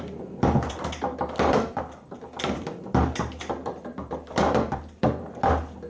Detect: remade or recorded remade